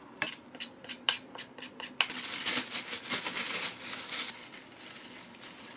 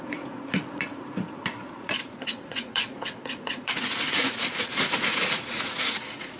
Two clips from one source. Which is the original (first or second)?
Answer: first